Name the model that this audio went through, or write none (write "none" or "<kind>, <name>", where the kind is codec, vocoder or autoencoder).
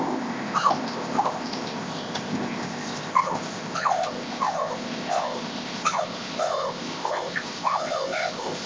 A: codec, ZipCodec